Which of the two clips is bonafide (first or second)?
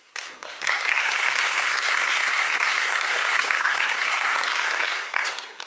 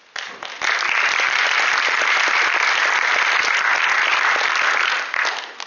second